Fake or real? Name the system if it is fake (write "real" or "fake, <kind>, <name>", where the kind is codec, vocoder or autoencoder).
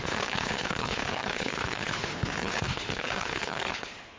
fake, codec, HILCodec